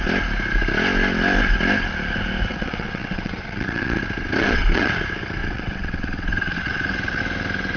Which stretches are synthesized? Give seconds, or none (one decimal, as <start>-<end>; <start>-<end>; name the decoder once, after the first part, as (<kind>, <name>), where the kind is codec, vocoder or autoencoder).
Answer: 2.5-4.0 (vocoder, WaveNeXt); 4.4-4.9; 5.4-7.2